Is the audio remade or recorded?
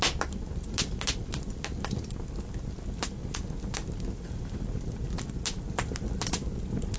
recorded